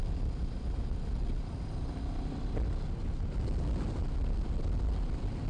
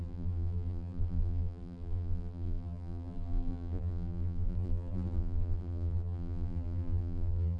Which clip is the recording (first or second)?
first